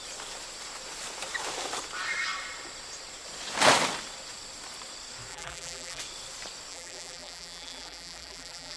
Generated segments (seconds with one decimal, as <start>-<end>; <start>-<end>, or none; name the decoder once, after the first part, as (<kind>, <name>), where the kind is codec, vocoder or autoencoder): 5.3-6.0 (vocoder, BigVGAN v2); 6.7-8.8